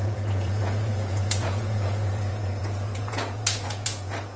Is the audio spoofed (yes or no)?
yes